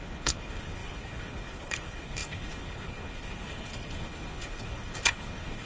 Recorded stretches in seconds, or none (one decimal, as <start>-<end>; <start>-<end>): none